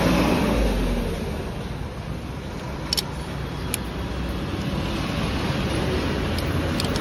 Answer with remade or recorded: recorded